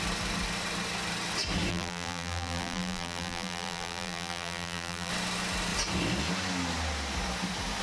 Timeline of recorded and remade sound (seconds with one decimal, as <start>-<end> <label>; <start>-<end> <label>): 0.0-1.7 recorded; 1.7-5.1 remade; 5.1-7.8 recorded